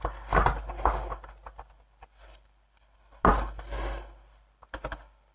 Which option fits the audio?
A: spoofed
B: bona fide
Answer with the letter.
B